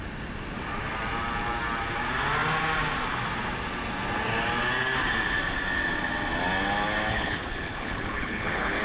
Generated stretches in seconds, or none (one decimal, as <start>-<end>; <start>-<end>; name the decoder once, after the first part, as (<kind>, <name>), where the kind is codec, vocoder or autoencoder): 7.1-8.8 (codec, HILCodec)